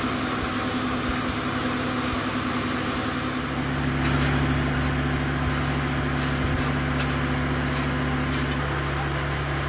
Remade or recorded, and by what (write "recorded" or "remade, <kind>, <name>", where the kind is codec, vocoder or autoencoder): recorded